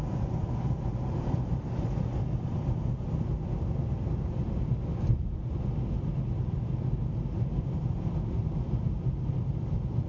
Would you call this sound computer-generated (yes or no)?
no